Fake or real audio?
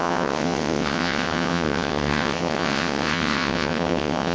fake